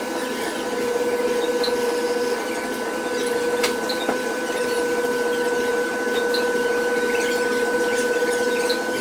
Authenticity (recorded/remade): recorded